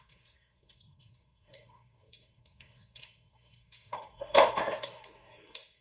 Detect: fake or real fake